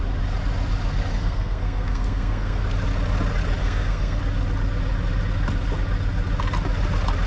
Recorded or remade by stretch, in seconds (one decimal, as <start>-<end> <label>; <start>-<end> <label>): 0.0-1.1 recorded; 1.1-2.6 remade; 2.6-3.6 recorded; 3.6-4.2 remade; 4.2-7.3 recorded